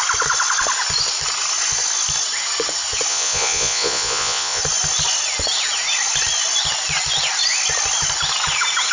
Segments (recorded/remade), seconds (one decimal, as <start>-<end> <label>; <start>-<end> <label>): 0.0-3.1 recorded; 3.1-4.6 remade; 4.6-8.9 recorded